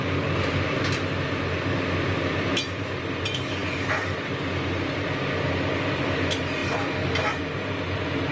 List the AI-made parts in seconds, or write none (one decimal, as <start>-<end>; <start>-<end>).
none